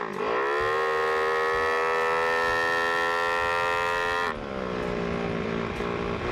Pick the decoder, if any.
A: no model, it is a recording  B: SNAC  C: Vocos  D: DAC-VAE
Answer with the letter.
A